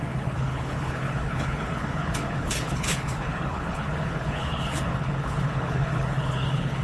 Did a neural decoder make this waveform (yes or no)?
yes